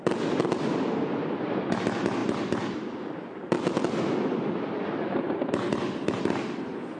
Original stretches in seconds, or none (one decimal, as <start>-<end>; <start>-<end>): 0.0-2.2; 6.2-7.0